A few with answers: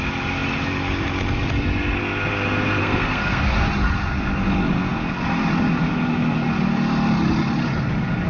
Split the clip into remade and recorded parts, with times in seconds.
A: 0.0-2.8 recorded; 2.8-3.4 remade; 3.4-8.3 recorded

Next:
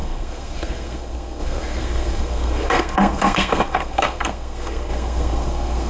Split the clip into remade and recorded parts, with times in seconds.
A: 0.0-5.9 remade

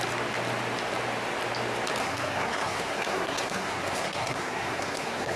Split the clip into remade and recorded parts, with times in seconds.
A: 0.0-2.0 recorded; 2.0-5.4 remade

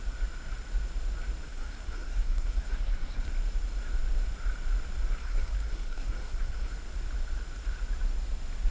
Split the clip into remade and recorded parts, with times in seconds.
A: 0.0-1.5 recorded; 1.5-3.3 remade; 3.3-5.2 recorded; 5.2-6.7 remade; 6.7-8.7 recorded

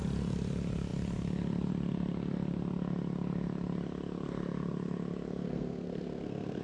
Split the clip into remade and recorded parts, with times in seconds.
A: 0.0-5.4 recorded; 5.4-6.6 remade

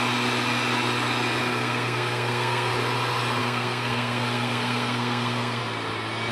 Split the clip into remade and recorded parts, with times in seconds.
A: 0.0-1.4 recorded; 1.4-2.7 remade; 2.7-3.4 recorded; 3.4-5.6 remade; 5.6-6.3 recorded

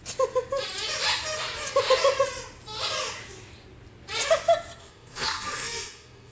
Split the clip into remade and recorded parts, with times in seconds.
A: 0.0-4.8 recorded; 4.8-6.3 remade